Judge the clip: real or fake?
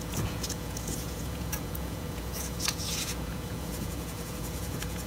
fake